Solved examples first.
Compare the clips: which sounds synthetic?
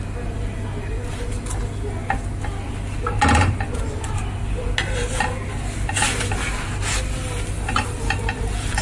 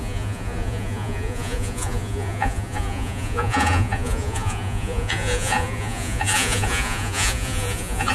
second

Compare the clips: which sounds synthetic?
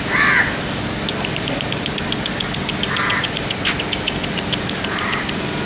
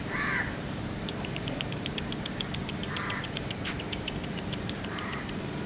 second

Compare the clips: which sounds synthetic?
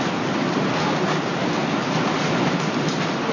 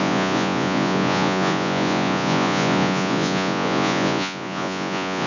second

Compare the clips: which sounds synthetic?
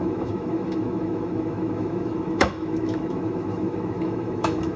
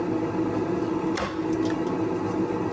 first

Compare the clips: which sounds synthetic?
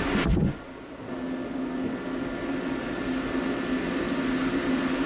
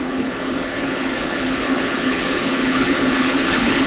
second